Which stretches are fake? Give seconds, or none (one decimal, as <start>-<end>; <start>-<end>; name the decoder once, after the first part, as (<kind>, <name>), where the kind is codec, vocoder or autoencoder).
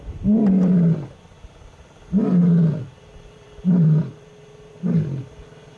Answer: 1.3-4.8 (vocoder, BigVGAN v2)